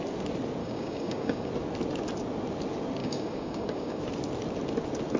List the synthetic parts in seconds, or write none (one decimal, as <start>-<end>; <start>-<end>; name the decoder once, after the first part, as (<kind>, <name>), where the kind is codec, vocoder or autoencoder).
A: 0.6-1.5 (codec, DAC); 3.0-4.0